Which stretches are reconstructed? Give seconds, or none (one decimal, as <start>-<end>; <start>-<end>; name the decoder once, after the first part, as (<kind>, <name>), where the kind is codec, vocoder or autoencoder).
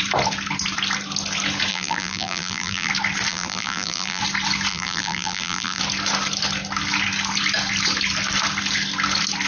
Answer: 1.7-2.9 (vocoder, BigVGAN v2); 3.3-4.2; 4.7-5.8